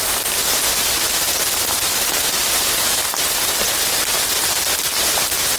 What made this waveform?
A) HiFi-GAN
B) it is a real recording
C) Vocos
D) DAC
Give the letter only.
B